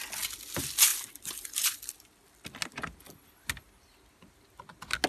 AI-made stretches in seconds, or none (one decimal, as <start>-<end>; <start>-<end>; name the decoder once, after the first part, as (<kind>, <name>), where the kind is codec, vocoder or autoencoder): 0.9-2.0 (vocoder, BigVGAN v2)